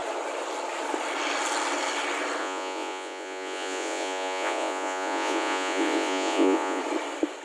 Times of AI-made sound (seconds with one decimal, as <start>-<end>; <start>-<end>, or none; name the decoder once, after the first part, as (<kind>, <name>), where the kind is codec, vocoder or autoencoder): 2.4-6.8 (vocoder, Vocos)